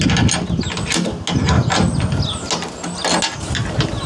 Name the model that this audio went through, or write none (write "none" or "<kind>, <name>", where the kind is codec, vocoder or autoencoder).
none